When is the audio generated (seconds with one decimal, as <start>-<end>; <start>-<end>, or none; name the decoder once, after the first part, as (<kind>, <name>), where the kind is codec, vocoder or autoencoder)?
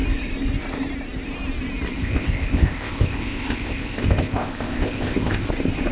2.0-5.5 (codec, ZipCodec)